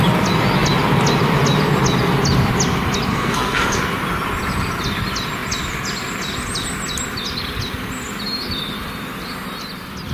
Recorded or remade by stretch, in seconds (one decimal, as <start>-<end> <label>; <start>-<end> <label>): 0.0-3.1 recorded; 3.1-3.8 remade; 3.8-10.1 recorded